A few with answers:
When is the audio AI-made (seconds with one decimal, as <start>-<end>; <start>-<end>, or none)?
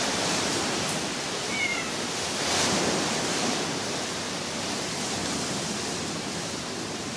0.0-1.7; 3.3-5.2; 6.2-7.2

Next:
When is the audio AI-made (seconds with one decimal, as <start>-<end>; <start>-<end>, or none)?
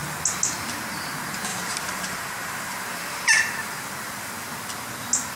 1.5-3.9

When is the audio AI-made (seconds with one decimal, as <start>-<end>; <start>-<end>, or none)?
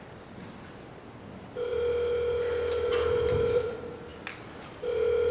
0.0-1.7; 2.9-4.1